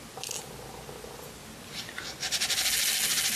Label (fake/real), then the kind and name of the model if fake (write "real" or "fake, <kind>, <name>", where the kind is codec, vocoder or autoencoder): real